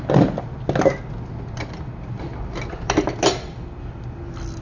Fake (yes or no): no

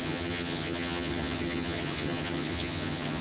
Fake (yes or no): yes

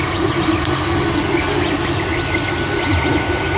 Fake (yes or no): no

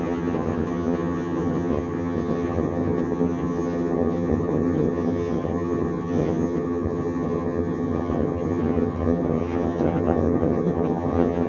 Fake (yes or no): yes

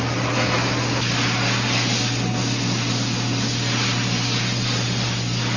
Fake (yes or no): no